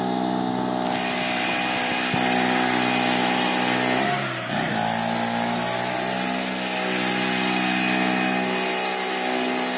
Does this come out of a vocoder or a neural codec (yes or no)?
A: no